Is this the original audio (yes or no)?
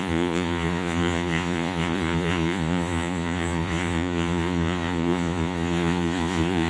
no